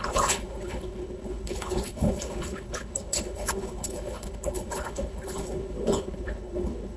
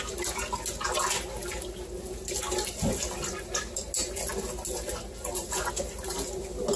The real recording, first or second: second